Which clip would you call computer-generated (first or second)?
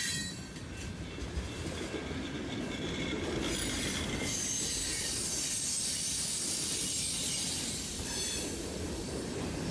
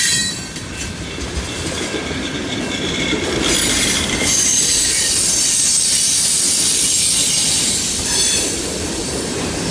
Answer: second